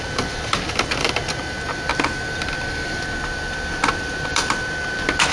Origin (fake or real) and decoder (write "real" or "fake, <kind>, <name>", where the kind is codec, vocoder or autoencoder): fake, vocoder, BigVGAN v2